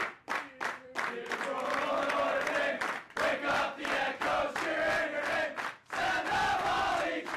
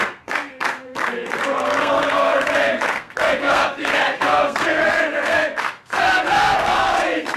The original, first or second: first